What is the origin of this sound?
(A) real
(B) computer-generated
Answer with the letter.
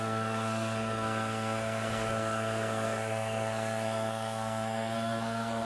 B